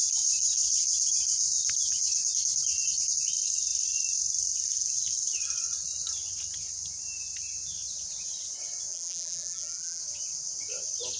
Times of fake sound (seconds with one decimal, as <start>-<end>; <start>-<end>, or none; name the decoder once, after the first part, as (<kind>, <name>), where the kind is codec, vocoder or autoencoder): 8.9-10.0 (vocoder, BigVGAN v2)